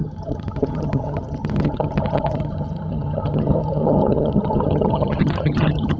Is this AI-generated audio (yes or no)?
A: yes